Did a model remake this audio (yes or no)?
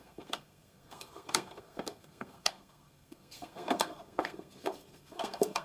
yes